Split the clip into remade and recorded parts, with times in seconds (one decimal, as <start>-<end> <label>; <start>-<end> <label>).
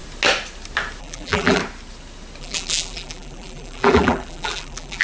0.0-1.0 recorded; 1.0-1.6 remade; 1.6-2.4 recorded; 2.4-5.0 remade